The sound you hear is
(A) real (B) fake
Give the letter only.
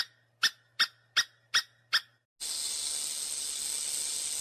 A